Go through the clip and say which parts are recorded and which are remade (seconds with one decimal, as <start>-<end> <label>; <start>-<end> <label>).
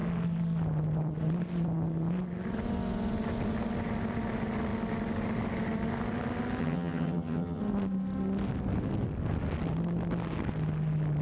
0.0-6.6 recorded; 6.6-7.6 remade; 7.6-11.2 recorded